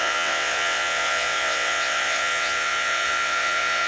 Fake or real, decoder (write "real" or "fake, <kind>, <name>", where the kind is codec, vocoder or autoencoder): fake, vocoder, WaveNeXt